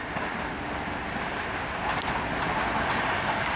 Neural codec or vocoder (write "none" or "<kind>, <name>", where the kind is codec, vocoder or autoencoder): none